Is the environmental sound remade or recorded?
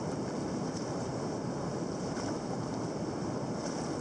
recorded